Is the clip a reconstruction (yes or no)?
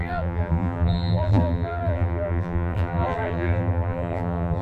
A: yes